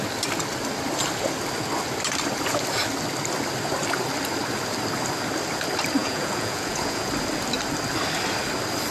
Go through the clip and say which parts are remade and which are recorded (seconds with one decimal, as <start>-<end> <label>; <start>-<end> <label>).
0.0-6.0 recorded; 6.0-7.1 remade; 7.1-8.9 recorded